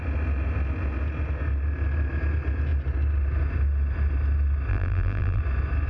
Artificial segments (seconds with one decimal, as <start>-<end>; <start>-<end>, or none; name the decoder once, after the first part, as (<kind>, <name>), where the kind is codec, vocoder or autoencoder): 4.7-5.4 (vocoder, BigVGAN v2)